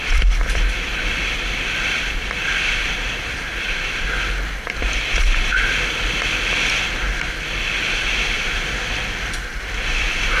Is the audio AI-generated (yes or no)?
yes